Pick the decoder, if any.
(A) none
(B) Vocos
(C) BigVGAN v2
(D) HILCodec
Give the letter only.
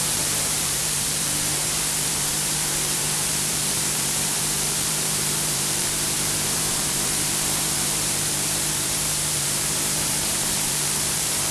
C